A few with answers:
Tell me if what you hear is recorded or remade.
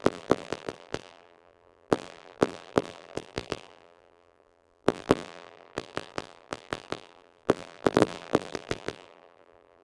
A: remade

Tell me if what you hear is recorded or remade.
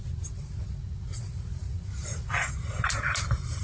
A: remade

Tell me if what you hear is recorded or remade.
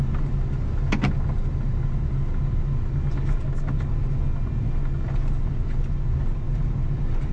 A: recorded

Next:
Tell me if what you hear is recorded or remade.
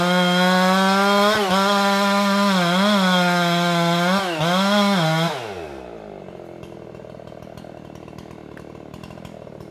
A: recorded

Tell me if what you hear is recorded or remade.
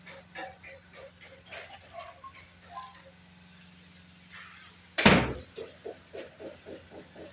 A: recorded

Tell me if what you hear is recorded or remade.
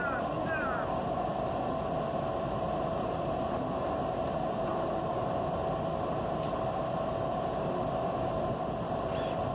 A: remade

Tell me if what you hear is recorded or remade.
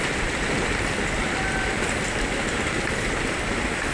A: remade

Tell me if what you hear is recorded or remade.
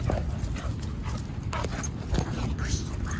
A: recorded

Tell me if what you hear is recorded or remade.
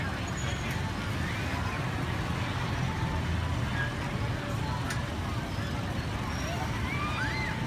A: recorded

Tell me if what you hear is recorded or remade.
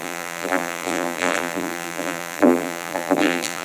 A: remade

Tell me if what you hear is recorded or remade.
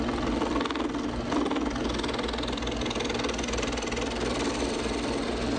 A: recorded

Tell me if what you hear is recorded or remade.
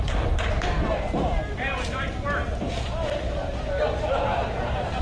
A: recorded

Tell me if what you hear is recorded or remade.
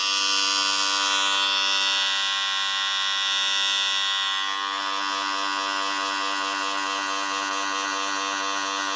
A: recorded